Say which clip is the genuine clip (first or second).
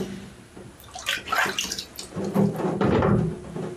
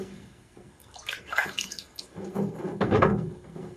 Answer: first